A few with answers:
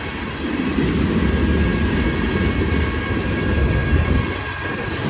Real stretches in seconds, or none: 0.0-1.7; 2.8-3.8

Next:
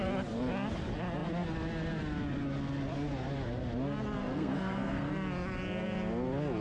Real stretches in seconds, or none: 0.0-4.2; 5.1-6.6

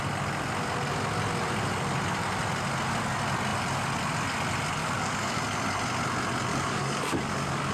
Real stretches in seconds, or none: 0.0-4.8; 5.4-6.5

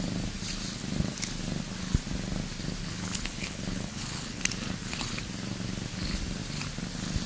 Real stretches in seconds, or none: 0.0-2.8; 4.4-7.3

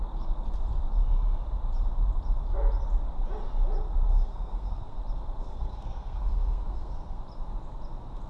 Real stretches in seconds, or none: 0.0-4.1; 5.0-5.4; 7.2-8.3